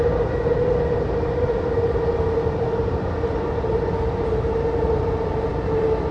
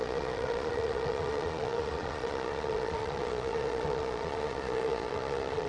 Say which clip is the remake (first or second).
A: second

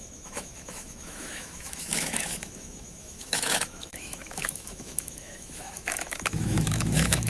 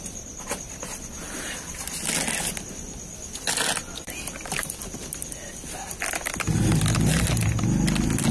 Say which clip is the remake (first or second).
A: first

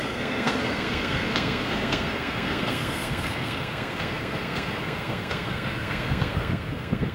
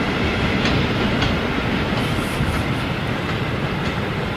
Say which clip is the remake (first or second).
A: first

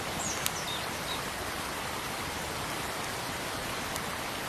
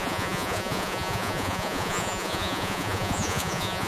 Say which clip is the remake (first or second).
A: second